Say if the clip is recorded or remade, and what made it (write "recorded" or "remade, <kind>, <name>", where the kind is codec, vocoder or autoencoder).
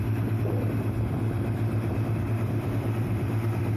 remade, vocoder, BigVGAN v2